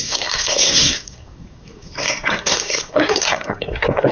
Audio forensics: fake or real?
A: fake